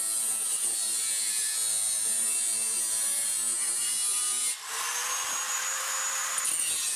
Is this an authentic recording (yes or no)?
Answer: yes